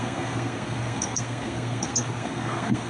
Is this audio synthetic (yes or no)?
yes